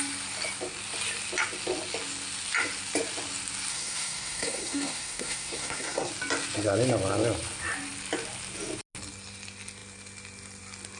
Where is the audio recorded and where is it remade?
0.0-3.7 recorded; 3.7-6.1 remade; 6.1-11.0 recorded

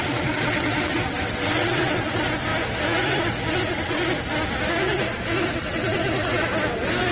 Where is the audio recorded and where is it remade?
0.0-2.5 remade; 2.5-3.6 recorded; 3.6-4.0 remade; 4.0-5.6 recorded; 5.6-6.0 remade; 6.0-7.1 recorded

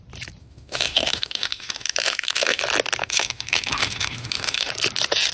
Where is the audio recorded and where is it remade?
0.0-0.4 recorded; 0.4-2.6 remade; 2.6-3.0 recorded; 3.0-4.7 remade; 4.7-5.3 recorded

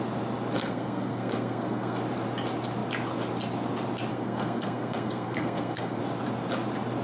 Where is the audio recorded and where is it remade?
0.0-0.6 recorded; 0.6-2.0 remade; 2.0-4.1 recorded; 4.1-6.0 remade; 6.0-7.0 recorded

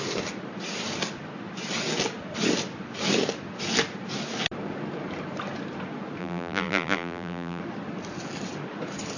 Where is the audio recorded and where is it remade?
0.0-6.2 recorded; 6.2-7.6 remade; 7.6-9.2 recorded

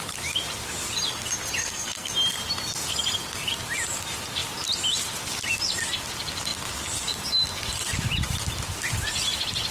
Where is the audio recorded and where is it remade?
0.0-1.6 recorded; 1.6-2.1 remade; 2.1-9.7 recorded

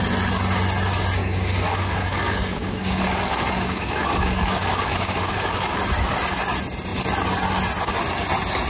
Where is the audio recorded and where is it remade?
0.0-1.2 recorded; 1.2-5.8 remade; 5.8-8.7 recorded